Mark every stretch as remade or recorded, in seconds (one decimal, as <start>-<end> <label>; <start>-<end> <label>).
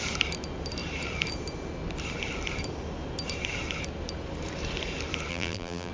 0.0-5.3 recorded; 5.3-5.9 remade